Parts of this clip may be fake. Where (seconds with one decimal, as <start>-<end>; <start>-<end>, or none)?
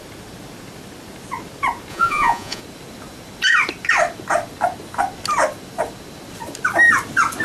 1.9-2.6